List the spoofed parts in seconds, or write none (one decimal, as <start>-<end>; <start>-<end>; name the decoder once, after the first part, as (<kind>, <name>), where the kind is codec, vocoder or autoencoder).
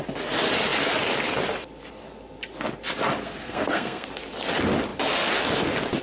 3.2-4.1 (codec, SNAC)